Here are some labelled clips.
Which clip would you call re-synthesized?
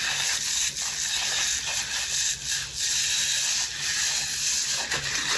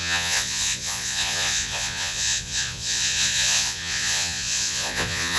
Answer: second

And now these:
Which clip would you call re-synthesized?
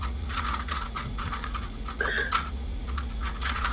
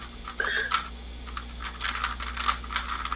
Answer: first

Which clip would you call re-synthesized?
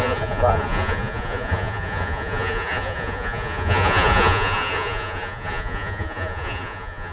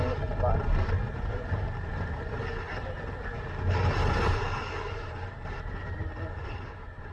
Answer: first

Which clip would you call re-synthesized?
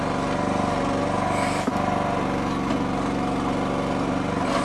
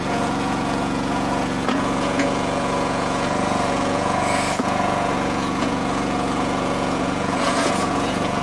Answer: second